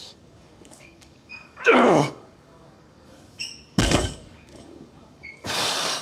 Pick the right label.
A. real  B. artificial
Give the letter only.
B